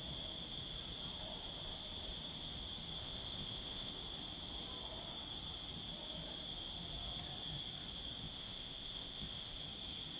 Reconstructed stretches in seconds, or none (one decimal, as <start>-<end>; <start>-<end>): 3.0-3.9; 8.2-9.6